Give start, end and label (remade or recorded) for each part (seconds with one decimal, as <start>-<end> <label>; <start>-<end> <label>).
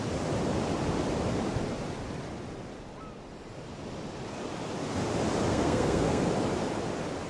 0.0-5.5 recorded; 5.5-6.2 remade; 6.2-7.3 recorded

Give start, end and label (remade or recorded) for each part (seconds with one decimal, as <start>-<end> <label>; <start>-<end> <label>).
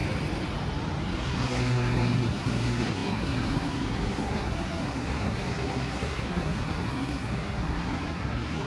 0.0-1.0 recorded; 1.0-8.7 remade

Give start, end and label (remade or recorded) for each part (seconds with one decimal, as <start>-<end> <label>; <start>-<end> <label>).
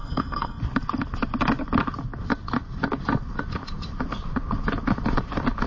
0.0-0.6 remade; 0.6-5.7 recorded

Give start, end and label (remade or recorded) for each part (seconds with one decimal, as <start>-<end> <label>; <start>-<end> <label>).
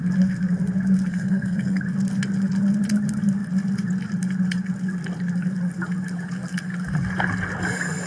0.0-1.1 recorded; 1.1-1.8 remade; 1.8-8.1 recorded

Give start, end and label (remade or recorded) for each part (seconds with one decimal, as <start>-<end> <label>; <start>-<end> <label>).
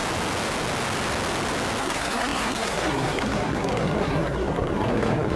0.0-1.8 recorded; 1.8-5.4 remade